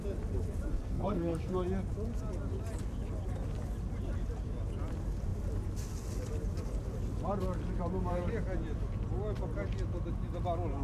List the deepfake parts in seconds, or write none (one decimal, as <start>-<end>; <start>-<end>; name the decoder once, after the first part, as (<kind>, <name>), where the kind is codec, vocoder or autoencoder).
0.7-1.5 (codec, SNAC)